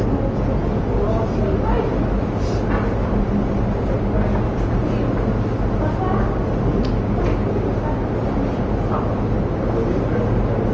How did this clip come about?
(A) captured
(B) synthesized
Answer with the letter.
A